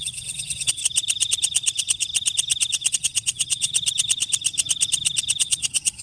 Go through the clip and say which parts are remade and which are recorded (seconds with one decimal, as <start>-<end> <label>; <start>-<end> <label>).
0.0-0.8 remade; 0.8-2.9 recorded; 2.9-3.7 remade; 3.7-5.4 recorded; 5.4-6.0 remade